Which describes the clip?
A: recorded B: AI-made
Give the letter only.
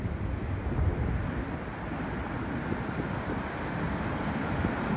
B